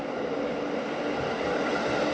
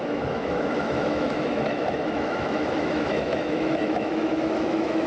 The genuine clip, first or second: first